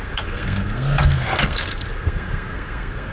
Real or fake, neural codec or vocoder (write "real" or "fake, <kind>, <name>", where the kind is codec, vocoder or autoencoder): fake, codec, SNAC